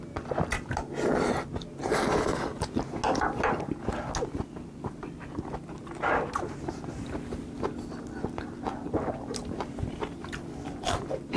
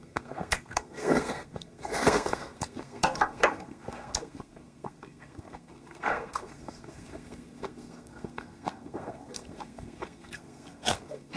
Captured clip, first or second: first